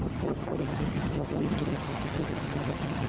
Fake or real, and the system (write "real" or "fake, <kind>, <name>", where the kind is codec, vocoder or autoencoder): fake, vocoder, HiFi-GAN